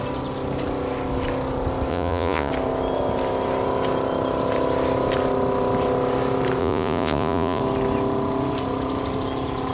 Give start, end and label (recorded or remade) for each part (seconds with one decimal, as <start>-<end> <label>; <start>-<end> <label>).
0.0-1.9 recorded; 1.9-2.5 remade; 2.5-6.6 recorded; 6.6-7.6 remade; 7.6-9.7 recorded